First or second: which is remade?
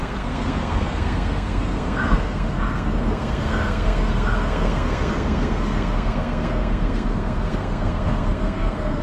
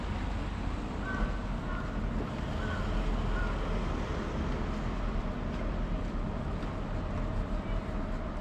first